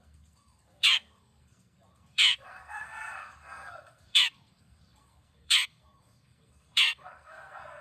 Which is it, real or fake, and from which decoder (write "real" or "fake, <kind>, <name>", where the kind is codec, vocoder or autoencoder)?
fake, codec, SNAC